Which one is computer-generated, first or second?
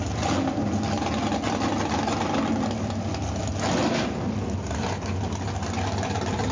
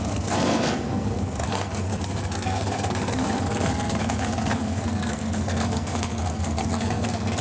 second